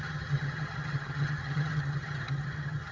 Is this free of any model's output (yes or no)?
no